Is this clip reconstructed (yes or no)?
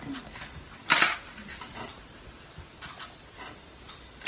no